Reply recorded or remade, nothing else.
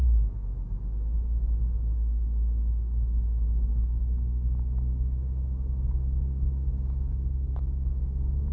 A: remade